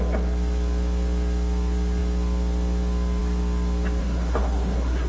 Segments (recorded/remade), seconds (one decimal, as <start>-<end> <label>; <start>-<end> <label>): 0.0-4.0 recorded; 4.0-5.1 remade